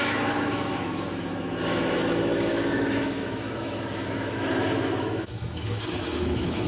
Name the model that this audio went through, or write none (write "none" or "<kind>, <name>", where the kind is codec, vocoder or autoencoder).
autoencoder, DAC-VAE